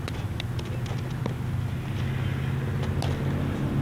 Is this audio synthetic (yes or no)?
no